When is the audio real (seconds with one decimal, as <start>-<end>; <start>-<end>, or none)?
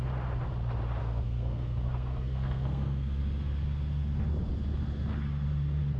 0.0-1.0; 3.2-6.0